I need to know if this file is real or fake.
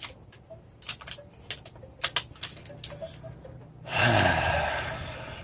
real